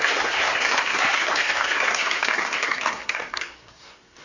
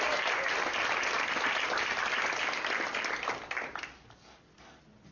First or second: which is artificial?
first